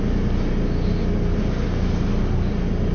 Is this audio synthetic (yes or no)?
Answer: no